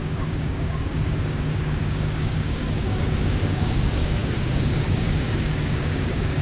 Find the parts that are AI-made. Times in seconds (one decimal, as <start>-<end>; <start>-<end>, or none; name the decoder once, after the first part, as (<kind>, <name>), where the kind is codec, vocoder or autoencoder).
0.0-6.4 (codec, DAC)